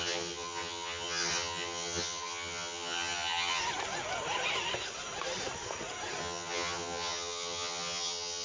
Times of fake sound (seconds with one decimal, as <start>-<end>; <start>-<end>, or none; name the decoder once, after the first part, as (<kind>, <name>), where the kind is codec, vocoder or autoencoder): 0.0-3.6 (vocoder, HiFi-GAN); 6.2-8.4